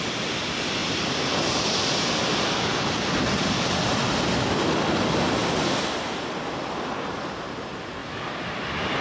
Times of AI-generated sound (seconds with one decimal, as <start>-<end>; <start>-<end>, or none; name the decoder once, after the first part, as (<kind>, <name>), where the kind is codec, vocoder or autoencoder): 0.8-3.1 (vocoder, BigVGAN v2); 5.4-7.4; 8.0-9.0